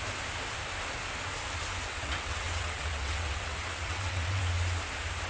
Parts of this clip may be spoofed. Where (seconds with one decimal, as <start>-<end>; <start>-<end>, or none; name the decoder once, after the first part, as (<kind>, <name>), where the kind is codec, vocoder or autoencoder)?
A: 1.9-4.4 (vocoder, WaveNeXt)